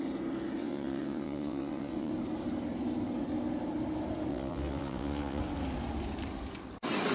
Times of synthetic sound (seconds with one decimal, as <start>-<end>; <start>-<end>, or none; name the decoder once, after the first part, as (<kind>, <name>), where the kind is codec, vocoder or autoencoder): 0.6-2.1 (vocoder, WaveNeXt); 4.3-5.4